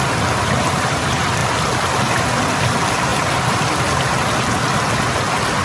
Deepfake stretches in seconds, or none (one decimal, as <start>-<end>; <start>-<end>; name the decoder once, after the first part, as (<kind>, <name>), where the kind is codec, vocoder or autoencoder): none